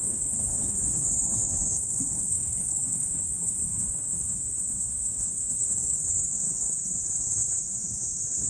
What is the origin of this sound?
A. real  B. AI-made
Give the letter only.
B